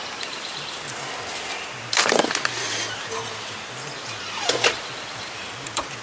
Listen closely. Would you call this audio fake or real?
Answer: real